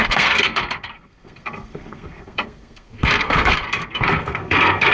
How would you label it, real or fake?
fake